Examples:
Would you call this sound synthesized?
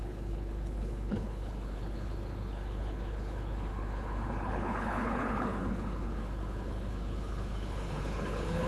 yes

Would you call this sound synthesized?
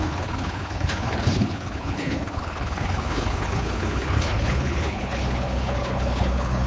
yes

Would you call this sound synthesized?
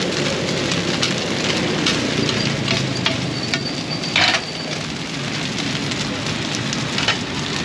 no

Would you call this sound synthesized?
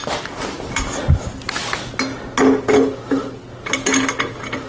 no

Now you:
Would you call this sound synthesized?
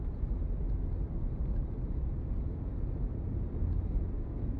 no